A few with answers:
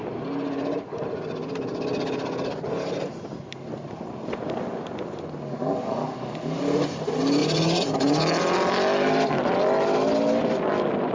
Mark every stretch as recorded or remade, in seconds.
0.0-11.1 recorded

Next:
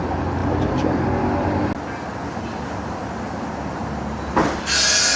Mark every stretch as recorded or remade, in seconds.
0.0-5.2 recorded

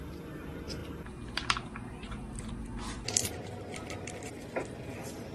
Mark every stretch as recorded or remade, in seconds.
0.0-5.3 recorded

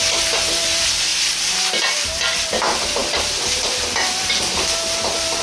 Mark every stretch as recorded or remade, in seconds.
0.0-3.0 recorded; 3.0-3.9 remade; 3.9-5.4 recorded

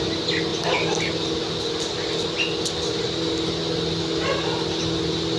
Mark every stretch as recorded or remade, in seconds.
0.0-5.4 recorded

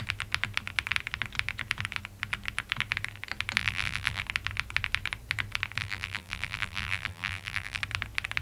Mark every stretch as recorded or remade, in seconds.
0.0-3.6 recorded; 3.6-4.2 remade; 4.2-5.8 recorded; 5.8-7.8 remade; 7.8-8.4 recorded

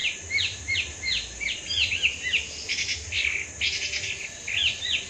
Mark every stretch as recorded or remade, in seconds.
0.0-5.1 recorded